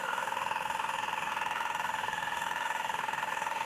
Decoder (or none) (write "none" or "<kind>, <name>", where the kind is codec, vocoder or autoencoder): autoencoder, DAC-VAE